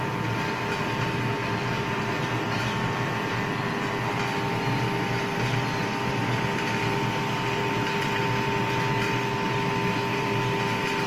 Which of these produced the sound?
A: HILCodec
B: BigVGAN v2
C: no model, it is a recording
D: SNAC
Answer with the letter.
C